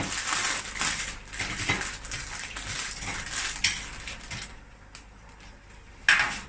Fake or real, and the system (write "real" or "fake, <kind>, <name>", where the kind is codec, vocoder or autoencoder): real